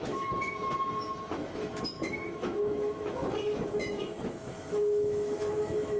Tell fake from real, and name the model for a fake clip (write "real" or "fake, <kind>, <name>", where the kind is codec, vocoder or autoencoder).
fake, autoencoder, DAC-VAE